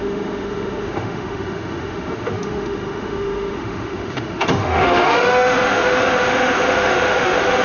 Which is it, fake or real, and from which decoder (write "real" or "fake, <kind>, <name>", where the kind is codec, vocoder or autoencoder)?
fake, autoencoder, DAC-VAE